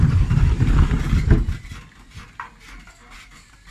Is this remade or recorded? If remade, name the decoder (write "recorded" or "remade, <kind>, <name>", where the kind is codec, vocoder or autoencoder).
recorded